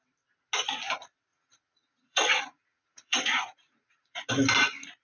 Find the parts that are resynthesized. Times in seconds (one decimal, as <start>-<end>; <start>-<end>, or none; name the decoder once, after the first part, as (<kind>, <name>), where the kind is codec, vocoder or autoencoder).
1.3-4.3 (vocoder, Vocos)